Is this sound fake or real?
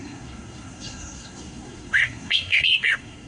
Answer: fake